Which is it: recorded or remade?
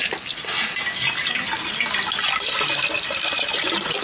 recorded